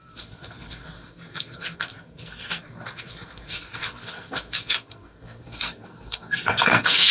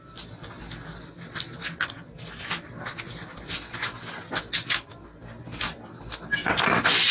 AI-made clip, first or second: first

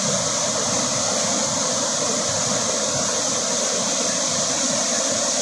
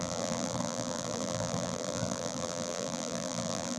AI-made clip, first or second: second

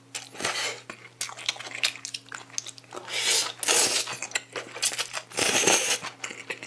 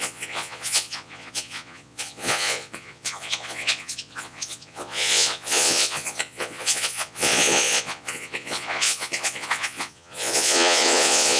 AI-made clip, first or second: second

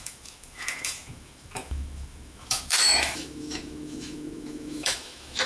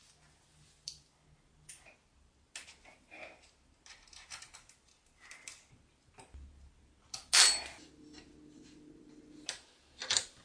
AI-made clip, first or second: first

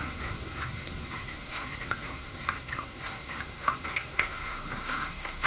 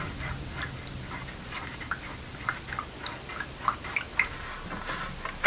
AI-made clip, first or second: first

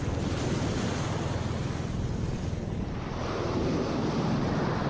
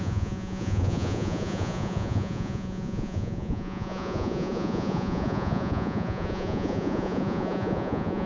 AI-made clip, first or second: second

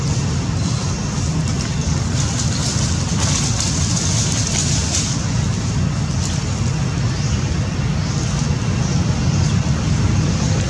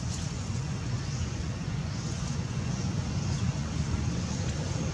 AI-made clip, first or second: second